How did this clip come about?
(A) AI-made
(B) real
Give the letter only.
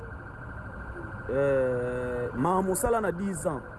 B